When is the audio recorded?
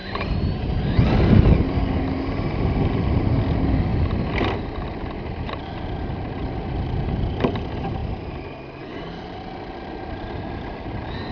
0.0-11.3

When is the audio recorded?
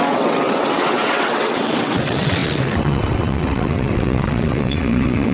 none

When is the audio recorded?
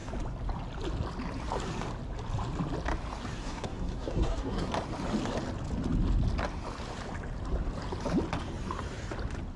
0.0-3.4; 4.7-9.6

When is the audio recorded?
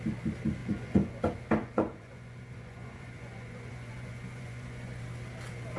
0.0-0.6; 1.2-1.6; 5.0-5.8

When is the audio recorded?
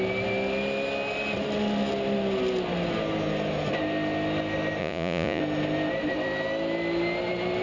0.0-4.8; 5.4-7.6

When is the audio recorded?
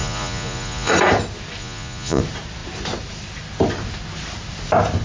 0.9-1.6; 2.2-5.0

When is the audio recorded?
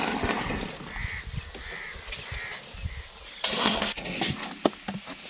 0.0-3.6; 4.2-5.3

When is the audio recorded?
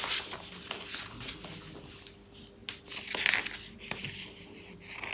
0.0-5.1